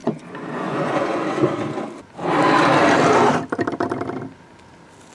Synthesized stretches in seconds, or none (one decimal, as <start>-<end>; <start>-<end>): 0.0-1.5